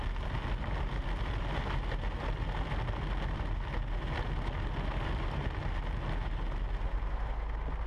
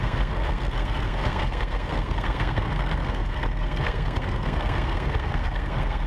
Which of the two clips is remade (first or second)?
second